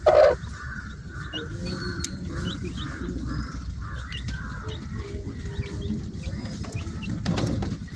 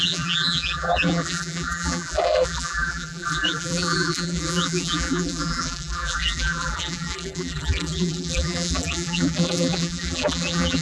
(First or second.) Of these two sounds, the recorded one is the first